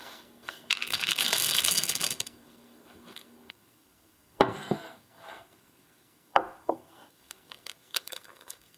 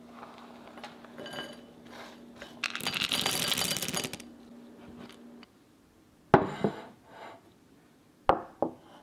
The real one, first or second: second